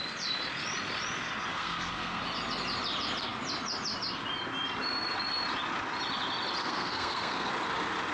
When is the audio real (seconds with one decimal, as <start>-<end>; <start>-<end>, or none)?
0.0-1.5; 2.2-6.6; 7.5-8.1